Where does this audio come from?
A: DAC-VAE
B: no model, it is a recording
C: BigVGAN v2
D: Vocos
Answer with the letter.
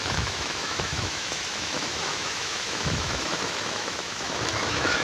A